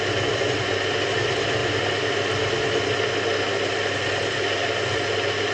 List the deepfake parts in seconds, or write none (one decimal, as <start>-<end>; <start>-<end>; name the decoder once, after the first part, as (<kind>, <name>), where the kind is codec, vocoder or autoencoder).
none